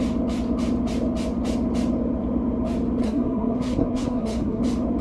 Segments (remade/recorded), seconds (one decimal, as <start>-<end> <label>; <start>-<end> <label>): 0.0-3.0 recorded; 3.0-4.6 remade; 4.6-5.0 recorded